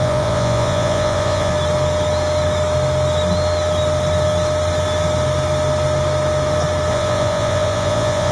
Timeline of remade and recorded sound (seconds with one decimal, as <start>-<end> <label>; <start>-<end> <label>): 0.0-1.5 remade; 1.5-6.9 recorded; 6.9-8.3 remade